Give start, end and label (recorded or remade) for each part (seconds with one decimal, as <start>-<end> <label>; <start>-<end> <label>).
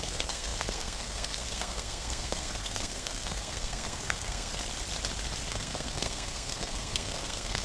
0.0-4.5 remade; 4.5-5.5 recorded; 5.5-7.6 remade